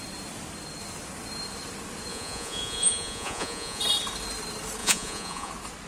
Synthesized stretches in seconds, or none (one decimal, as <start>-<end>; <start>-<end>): 2.1-3.8; 4.8-5.5